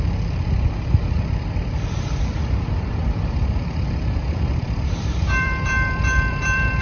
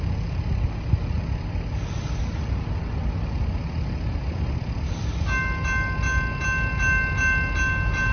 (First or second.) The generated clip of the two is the first